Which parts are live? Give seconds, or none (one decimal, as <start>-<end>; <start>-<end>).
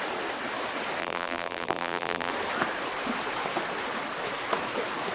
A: 0.0-1.0; 2.3-5.1